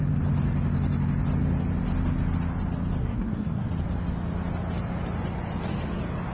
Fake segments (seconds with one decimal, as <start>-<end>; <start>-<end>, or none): 3.0-3.7

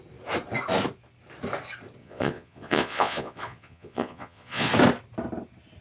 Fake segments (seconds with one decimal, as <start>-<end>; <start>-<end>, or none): 2.0-4.7

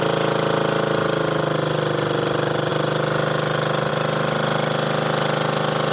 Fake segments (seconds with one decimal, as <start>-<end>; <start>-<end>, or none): none

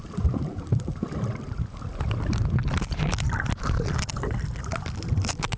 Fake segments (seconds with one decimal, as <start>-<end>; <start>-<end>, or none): 0.7-4.1

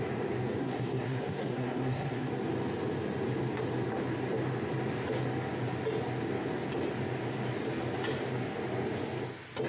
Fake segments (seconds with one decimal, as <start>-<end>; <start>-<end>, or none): 0.6-2.3